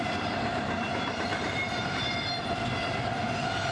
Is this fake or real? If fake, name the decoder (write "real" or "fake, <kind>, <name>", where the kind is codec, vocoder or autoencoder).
real